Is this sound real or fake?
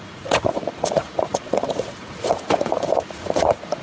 fake